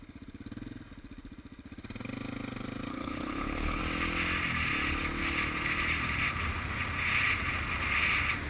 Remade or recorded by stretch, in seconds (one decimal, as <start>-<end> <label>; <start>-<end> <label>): 0.0-2.9 recorded; 2.9-3.8 remade; 3.8-8.5 recorded